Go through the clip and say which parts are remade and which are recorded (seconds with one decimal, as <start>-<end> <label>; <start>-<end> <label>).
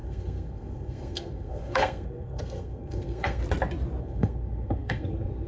0.0-3.4 remade; 3.4-4.0 recorded; 4.0-5.5 remade